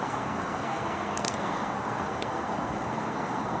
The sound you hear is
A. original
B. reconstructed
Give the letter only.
B